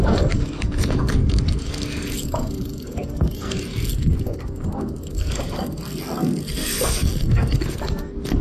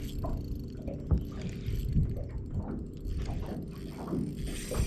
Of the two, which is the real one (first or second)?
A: second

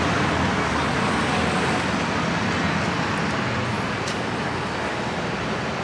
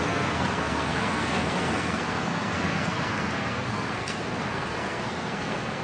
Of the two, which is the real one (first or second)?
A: first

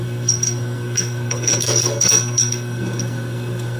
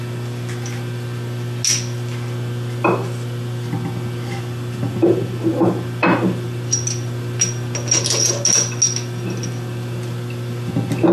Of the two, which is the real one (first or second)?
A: second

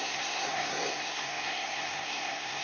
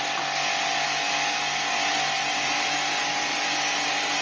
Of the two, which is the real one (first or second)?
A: second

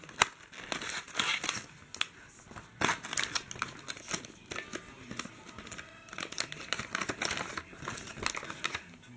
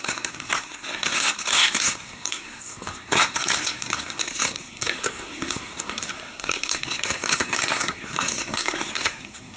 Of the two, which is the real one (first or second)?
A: first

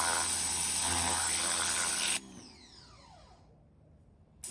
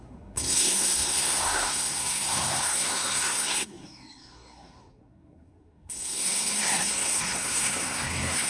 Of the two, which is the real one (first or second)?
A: first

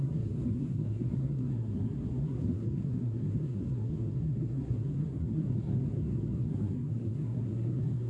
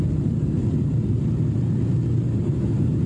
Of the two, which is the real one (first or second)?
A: second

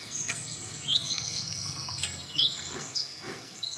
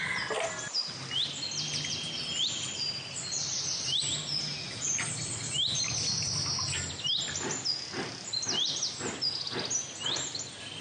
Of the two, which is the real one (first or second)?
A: second